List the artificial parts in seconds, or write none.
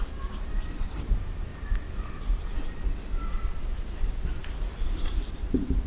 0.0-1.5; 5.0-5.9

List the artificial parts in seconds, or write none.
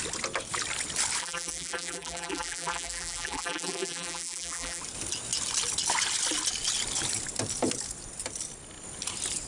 1.2-4.8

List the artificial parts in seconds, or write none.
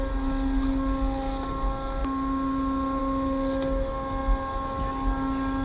none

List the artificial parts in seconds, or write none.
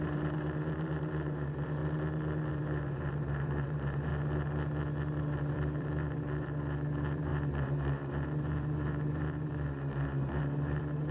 0.0-1.8; 2.5-4.1; 5.2-11.1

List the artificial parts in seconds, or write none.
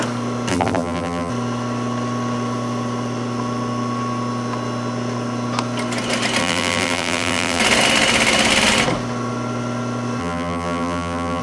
0.5-1.3; 6.4-7.6; 10.2-11.4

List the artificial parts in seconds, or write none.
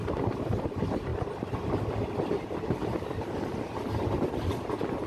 none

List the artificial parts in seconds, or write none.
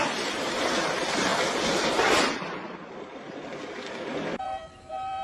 0.0-5.2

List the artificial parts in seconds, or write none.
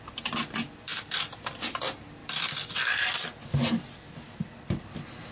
0.9-1.8